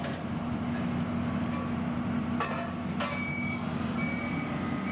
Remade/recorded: recorded